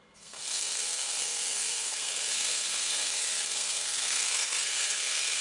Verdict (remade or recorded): remade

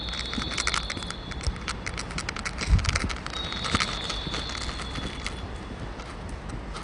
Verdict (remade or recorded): recorded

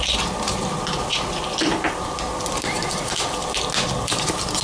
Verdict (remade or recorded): recorded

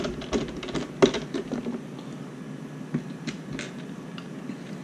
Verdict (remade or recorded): recorded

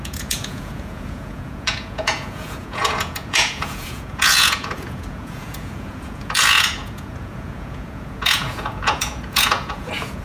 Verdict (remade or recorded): remade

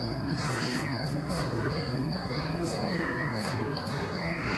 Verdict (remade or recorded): remade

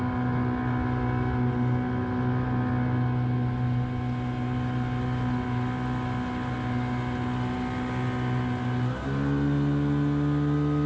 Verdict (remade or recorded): recorded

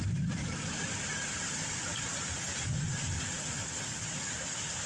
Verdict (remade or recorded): remade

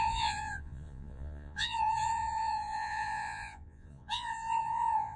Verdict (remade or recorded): remade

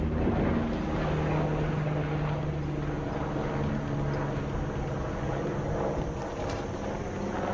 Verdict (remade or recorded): recorded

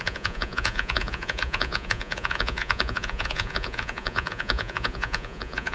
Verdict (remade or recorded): remade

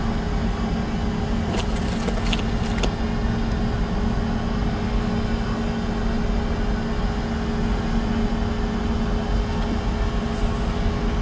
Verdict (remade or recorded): recorded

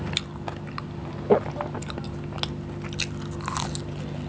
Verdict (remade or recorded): recorded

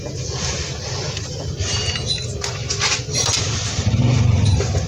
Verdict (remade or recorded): recorded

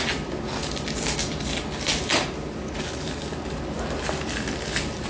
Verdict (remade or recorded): recorded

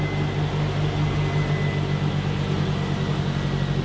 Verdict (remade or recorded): recorded